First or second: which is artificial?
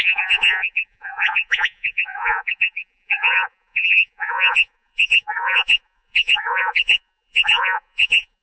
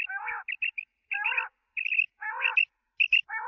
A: first